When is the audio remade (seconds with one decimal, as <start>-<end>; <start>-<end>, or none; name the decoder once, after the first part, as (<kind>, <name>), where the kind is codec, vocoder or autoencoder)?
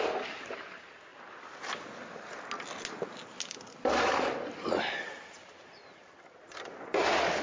none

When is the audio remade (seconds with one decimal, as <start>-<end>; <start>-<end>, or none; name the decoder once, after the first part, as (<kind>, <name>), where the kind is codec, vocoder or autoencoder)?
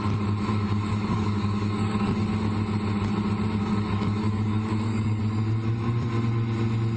0.5-2.2 (codec, DAC); 3.7-5.2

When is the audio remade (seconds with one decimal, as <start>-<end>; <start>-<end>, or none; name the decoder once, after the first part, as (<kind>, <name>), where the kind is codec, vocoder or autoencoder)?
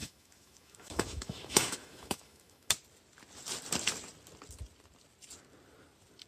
0.0-2.7 (autoencoder, DAC-VAE)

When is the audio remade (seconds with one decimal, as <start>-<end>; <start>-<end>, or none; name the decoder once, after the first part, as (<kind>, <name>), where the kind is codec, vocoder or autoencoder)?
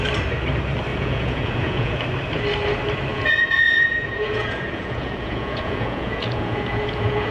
0.9-2.0 (vocoder, Vocos); 3.1-7.3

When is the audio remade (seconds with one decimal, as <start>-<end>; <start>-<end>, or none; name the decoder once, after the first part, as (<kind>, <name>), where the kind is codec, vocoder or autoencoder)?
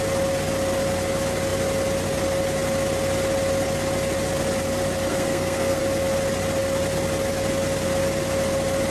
5.1-5.8 (codec, SNAC)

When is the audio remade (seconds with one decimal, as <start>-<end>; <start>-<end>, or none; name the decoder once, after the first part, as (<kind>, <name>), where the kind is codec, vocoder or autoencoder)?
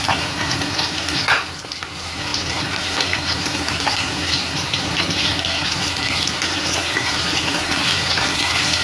0.0-8.8 (codec, SNAC)